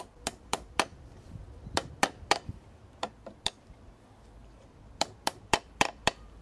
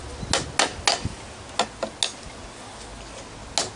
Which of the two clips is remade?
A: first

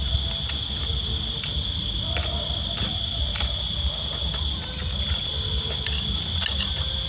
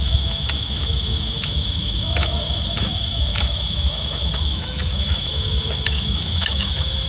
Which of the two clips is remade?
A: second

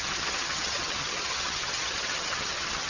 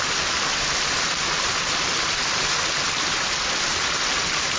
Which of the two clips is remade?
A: first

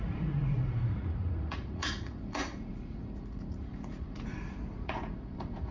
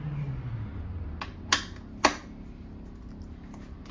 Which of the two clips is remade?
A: first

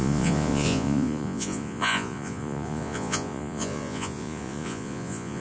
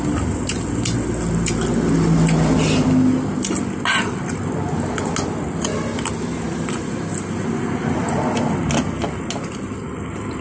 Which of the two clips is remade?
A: first